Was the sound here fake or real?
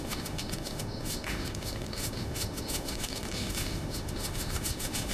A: fake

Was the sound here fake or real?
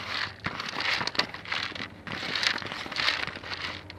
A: real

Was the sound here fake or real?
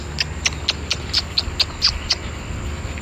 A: real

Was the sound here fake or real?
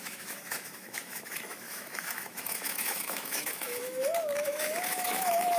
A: fake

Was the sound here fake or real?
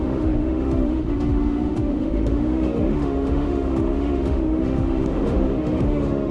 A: fake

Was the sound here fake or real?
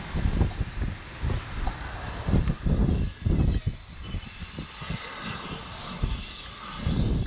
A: real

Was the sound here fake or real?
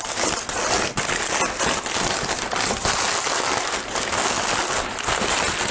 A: real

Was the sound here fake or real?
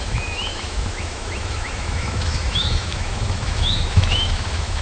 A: fake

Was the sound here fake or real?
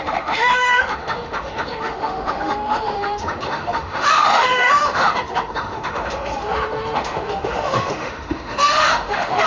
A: fake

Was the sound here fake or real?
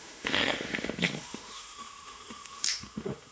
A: fake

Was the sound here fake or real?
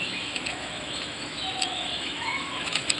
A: fake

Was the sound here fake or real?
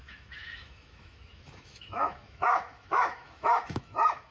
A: fake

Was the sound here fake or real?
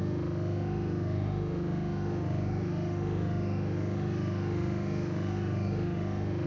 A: fake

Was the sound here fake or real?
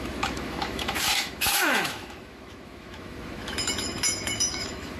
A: fake